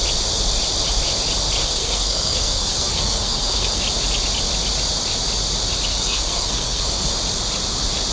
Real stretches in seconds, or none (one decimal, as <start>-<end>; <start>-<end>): 0.0-1.6; 3.8-5.9; 7.1-8.1